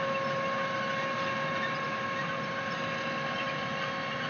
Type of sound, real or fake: real